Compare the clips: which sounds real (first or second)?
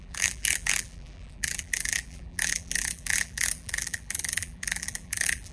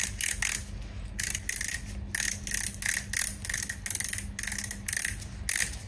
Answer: second